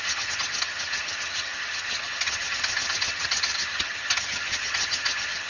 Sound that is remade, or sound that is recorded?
remade